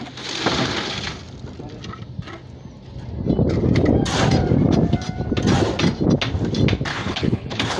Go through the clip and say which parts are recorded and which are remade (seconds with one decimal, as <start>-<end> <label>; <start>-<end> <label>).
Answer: 0.0-6.9 recorded; 6.9-7.8 remade